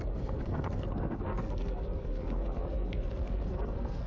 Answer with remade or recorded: remade